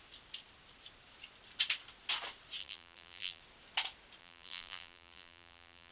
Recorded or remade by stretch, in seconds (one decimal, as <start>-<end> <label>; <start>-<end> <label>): 0.0-2.6 recorded; 2.6-3.4 remade; 3.4-4.2 recorded; 4.2-5.9 remade